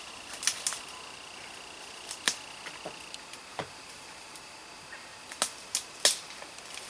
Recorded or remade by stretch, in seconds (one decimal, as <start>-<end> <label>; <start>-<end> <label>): 0.0-3.5 recorded; 3.5-4.6 remade; 4.6-6.9 recorded